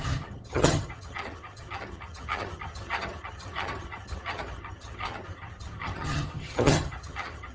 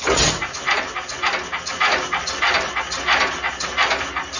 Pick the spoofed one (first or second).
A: first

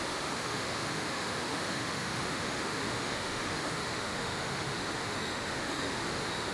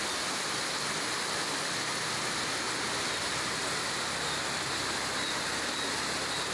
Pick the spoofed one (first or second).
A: first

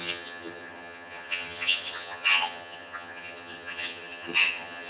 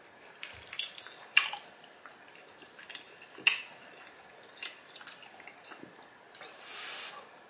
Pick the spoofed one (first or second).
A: first